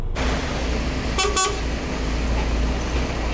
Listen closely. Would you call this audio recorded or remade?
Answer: recorded